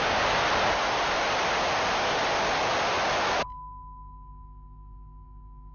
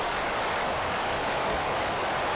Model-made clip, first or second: second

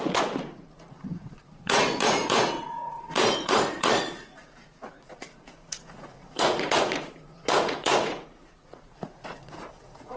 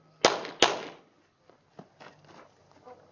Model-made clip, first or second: first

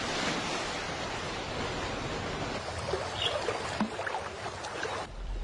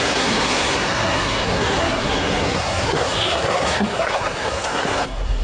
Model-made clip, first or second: second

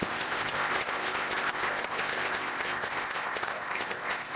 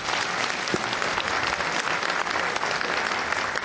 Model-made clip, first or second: first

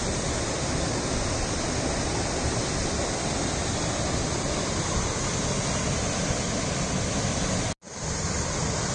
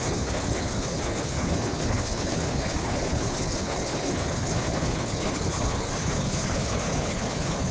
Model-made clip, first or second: second